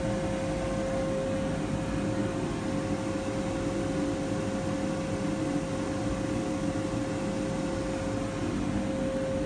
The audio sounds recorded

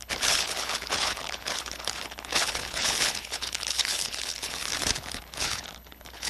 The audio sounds remade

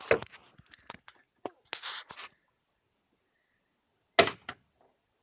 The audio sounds recorded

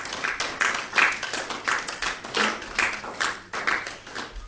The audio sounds recorded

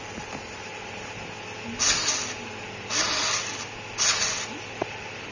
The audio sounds recorded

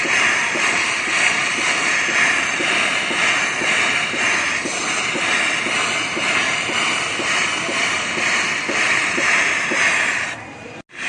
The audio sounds recorded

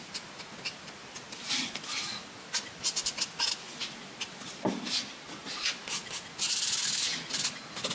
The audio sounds recorded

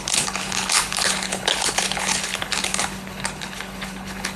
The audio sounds remade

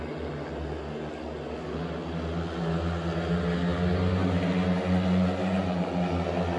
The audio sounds recorded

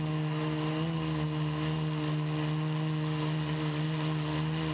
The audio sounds recorded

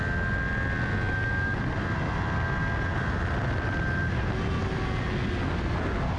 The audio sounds recorded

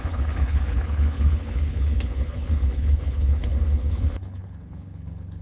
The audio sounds remade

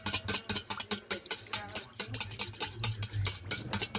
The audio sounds recorded